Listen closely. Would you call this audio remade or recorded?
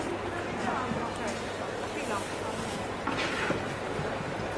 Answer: recorded